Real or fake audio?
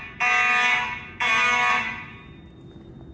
real